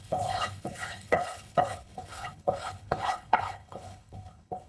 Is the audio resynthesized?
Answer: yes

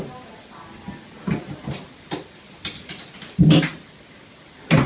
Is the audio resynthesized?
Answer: no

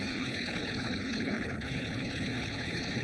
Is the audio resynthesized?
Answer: yes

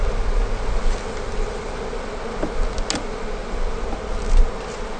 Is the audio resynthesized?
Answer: no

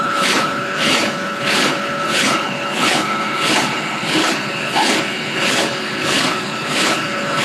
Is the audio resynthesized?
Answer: yes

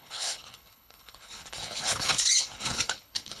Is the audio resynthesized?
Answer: yes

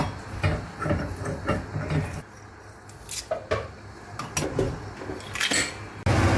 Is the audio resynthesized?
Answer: no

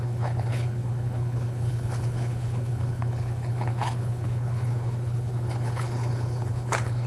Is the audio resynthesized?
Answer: yes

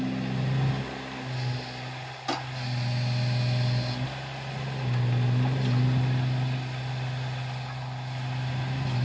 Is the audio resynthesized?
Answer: no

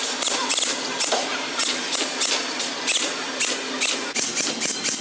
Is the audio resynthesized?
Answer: no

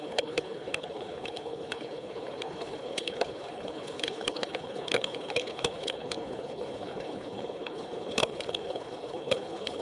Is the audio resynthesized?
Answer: yes